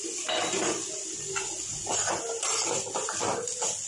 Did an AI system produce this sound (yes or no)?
no